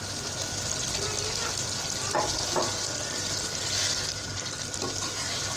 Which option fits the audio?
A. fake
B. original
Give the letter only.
B